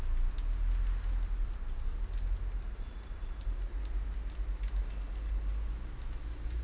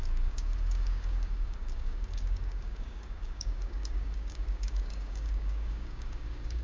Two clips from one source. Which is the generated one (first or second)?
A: second